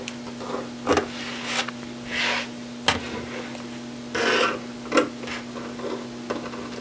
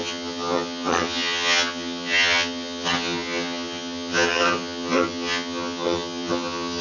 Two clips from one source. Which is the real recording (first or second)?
first